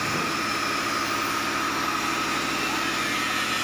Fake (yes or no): no